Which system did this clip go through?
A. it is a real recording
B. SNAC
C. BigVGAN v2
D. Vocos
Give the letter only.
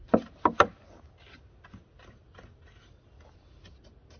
A